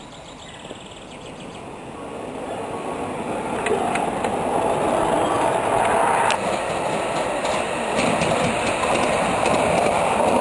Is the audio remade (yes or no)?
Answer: no